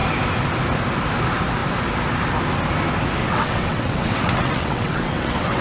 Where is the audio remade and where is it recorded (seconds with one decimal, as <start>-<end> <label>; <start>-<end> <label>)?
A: 0.0-3.2 recorded; 3.2-5.6 remade